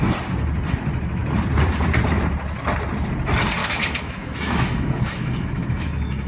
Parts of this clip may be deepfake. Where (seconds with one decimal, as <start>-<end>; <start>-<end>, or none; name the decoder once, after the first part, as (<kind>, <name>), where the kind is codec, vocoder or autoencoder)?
3.6-6.3 (autoencoder, DAC-VAE)